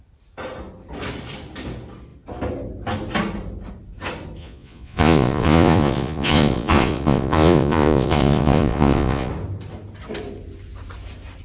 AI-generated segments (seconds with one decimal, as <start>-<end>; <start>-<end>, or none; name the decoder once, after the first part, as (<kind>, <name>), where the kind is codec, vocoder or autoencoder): 4.4-9.3 (vocoder, Vocos)